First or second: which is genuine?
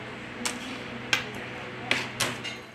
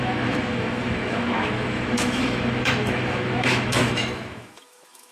first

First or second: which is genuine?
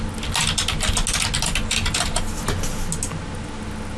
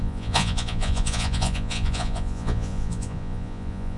first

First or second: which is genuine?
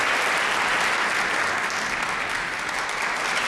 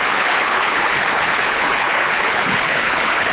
first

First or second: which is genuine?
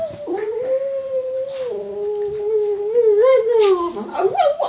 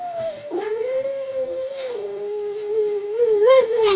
first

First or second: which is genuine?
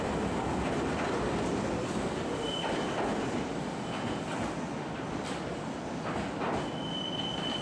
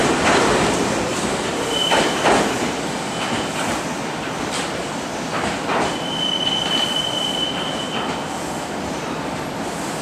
first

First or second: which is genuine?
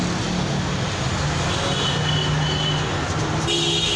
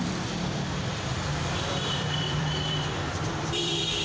first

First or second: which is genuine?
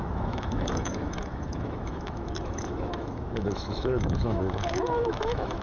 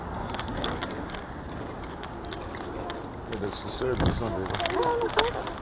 second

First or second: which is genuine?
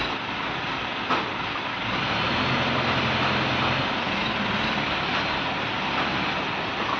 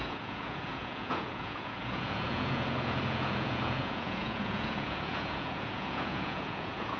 first